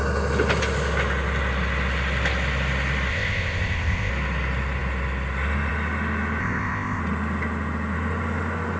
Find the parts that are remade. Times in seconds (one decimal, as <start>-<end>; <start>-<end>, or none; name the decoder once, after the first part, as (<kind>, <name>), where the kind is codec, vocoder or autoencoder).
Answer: 3.1-4.1 (codec, ZipCodec); 6.4-7.0